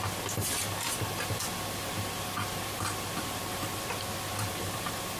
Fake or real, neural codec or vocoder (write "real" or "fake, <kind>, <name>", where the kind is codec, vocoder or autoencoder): real